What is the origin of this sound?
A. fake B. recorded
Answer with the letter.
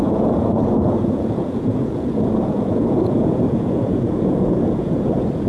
A